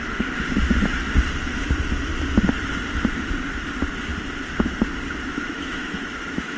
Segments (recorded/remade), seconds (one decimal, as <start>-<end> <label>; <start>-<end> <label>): 0.0-5.3 recorded; 5.3-6.6 remade

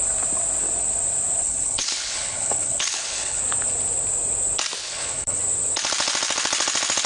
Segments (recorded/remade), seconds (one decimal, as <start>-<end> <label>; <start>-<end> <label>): 0.0-1.4 recorded; 1.4-3.4 remade; 3.4-4.8 recorded; 4.8-5.4 remade; 5.4-7.1 recorded

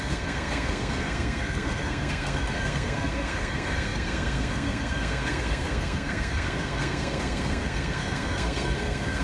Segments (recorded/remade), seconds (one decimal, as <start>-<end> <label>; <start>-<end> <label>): 0.0-9.2 remade

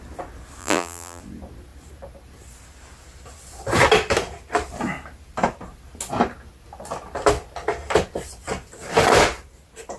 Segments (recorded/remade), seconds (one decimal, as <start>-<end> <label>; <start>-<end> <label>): 0.0-0.6 recorded; 0.6-1.2 remade; 1.2-10.0 recorded

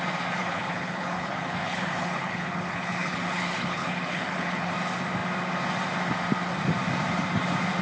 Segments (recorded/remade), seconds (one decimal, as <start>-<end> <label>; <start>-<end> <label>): 0.0-0.4 recorded; 0.4-4.7 remade; 4.7-7.8 recorded

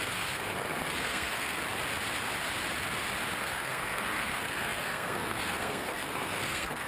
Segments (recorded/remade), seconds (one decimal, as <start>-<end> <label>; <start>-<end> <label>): 0.0-1.6 remade; 1.6-3.4 recorded; 3.4-6.9 remade

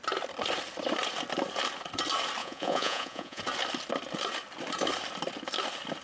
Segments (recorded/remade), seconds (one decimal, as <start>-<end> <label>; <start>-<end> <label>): 0.0-2.4 recorded; 2.4-3.4 remade; 3.4-6.0 recorded

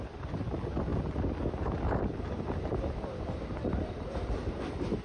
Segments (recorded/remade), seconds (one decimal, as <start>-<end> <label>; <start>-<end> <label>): 0.0-5.0 recorded